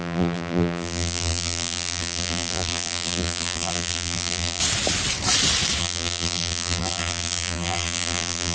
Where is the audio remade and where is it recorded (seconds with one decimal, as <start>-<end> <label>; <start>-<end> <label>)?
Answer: 0.0-4.6 remade; 4.6-5.8 recorded; 5.8-8.5 remade